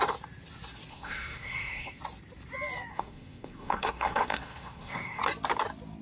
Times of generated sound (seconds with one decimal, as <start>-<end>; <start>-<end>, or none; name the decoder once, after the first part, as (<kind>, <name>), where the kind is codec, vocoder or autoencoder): 0.9-2.0 (codec, SNAC); 2.9-5.2